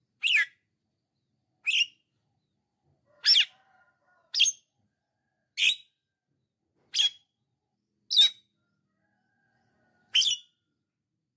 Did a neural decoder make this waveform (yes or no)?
no